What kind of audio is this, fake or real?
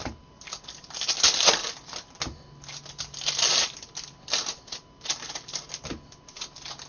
real